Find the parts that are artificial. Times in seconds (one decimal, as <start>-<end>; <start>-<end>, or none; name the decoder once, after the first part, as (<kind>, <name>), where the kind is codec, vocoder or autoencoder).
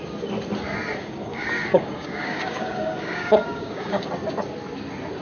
1.0-4.1 (codec, DAC)